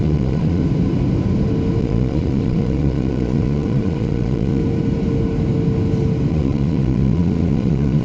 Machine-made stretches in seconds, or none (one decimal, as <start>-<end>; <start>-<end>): 0.0-0.6; 1.8-4.6; 6.3-8.0